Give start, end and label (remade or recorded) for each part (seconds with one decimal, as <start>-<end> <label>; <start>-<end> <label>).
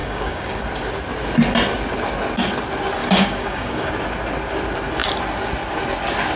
0.0-0.6 remade; 0.6-3.0 recorded; 3.0-3.9 remade; 3.9-6.4 recorded